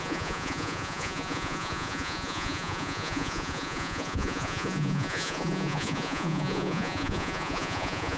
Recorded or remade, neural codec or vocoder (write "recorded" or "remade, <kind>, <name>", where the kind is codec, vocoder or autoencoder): remade, vocoder, Vocos